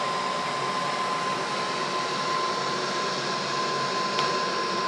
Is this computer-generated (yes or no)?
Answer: no